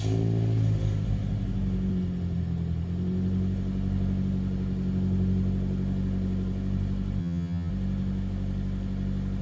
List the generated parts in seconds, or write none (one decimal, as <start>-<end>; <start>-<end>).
7.2-7.7